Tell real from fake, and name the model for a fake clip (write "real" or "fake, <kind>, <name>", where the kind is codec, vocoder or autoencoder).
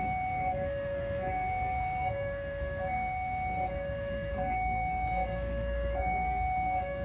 fake, codec, SNAC